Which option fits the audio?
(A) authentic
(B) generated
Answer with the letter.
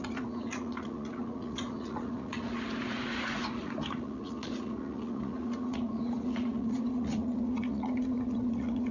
B